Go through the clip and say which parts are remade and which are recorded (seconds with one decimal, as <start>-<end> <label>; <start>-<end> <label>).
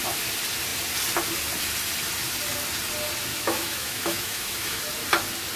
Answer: 0.0-3.3 recorded; 3.3-4.8 remade; 4.8-5.6 recorded